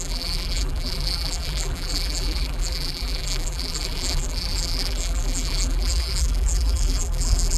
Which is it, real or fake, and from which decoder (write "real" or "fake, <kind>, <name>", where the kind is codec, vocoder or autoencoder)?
fake, vocoder, BigVGAN v2